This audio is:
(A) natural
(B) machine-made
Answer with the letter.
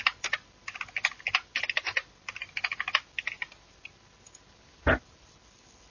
A